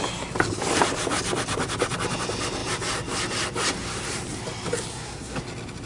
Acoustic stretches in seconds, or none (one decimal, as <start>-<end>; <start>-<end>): 0.0-4.9; 5.4-5.9